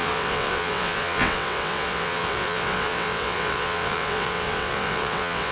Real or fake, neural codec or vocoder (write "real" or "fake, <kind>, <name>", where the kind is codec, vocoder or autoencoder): fake, vocoder, WaveNeXt